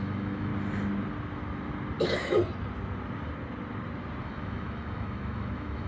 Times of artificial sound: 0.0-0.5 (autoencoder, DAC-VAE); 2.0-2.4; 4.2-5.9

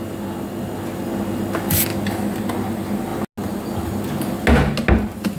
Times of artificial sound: none

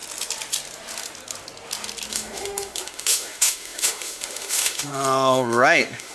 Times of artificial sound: 2.1-6.1 (autoencoder, DAC-VAE)

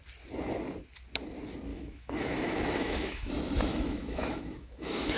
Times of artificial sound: 1.7-3.3 (autoencoder, DAC-VAE); 3.7-5.2

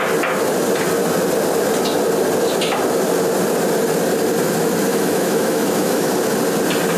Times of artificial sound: 4.9-6.1 (autoencoder, DAC-VAE)

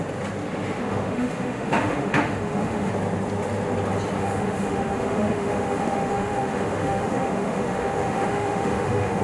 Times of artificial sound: 0.8-2.9 (autoencoder, DAC-VAE); 4.2-9.2

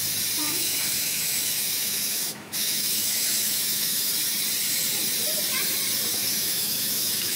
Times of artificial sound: 0.4-4.1 (autoencoder, DAC-VAE); 6.1-7.4

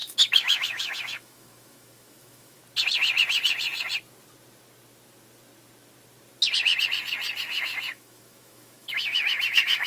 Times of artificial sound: 0.0-2.6 (autoencoder, DAC-VAE); 7.4-9.9